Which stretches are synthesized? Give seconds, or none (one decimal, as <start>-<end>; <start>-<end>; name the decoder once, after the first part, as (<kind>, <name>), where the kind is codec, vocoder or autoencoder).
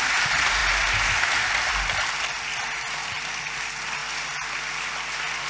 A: none